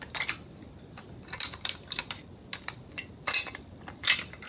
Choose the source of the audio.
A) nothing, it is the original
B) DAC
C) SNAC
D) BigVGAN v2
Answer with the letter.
A